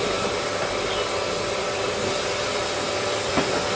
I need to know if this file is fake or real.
real